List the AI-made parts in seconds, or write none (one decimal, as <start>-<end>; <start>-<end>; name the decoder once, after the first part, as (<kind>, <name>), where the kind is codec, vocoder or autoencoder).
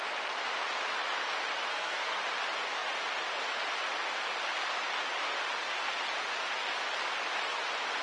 1.7-2.2 (codec, SNAC)